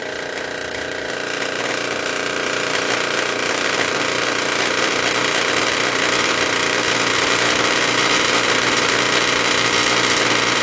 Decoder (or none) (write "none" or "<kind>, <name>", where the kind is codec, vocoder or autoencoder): vocoder, BigVGAN v2